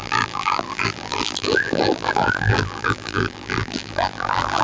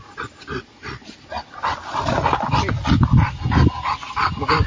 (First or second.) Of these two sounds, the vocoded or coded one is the first